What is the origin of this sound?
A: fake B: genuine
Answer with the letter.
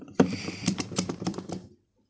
A